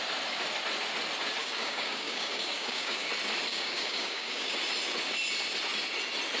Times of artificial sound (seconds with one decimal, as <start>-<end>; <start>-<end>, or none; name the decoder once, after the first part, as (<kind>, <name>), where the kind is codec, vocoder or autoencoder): 1.4-3.1 (codec, DAC); 3.5-4.6